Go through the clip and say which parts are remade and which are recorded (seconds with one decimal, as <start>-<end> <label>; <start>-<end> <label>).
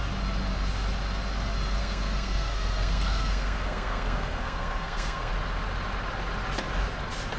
0.0-1.8 recorded; 1.8-5.3 remade; 5.3-7.4 recorded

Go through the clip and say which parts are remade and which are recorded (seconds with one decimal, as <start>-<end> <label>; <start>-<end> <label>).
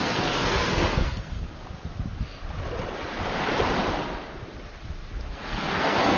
0.0-1.6 remade; 1.6-5.3 recorded; 5.3-6.2 remade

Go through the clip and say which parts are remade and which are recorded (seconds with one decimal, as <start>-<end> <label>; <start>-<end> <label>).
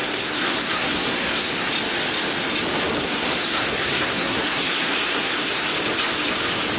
0.0-1.7 remade; 1.7-3.0 recorded; 3.0-5.7 remade; 5.7-6.8 recorded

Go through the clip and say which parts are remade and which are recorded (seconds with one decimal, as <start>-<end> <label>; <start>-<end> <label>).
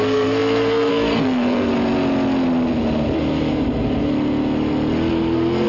0.0-1.7 remade; 1.7-5.1 recorded; 5.1-5.7 remade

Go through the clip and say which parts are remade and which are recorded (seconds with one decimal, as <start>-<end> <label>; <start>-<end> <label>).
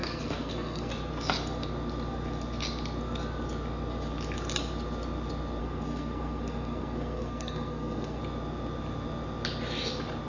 0.0-0.9 remade; 0.9-5.6 recorded; 5.6-8.2 remade; 8.2-10.3 recorded